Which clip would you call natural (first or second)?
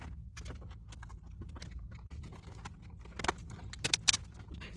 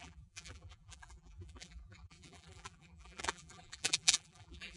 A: first